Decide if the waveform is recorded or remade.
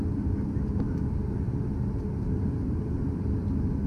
recorded